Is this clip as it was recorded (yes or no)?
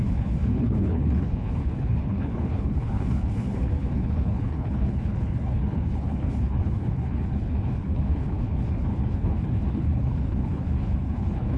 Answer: no